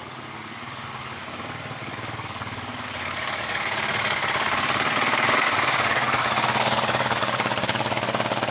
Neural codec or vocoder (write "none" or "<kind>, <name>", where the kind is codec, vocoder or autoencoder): codec, DAC